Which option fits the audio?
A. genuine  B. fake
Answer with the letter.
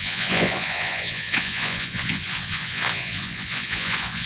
B